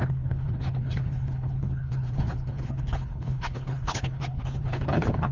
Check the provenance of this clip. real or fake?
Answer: fake